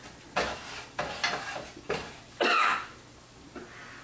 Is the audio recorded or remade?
recorded